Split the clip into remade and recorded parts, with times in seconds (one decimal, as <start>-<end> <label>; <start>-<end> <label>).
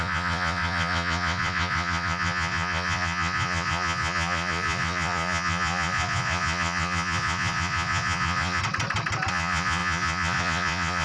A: 0.0-8.6 remade; 8.6-9.3 recorded; 9.3-11.0 remade